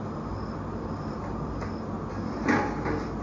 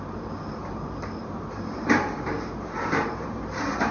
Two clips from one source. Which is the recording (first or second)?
first